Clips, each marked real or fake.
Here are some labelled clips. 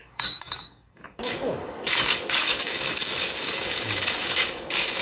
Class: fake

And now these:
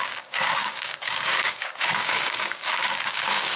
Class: fake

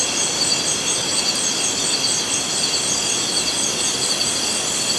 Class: real